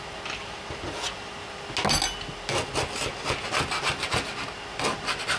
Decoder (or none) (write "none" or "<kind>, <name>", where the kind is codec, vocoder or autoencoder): none